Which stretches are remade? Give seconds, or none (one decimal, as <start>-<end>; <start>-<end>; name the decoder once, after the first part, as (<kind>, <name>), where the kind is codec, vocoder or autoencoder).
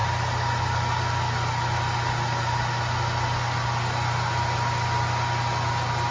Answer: none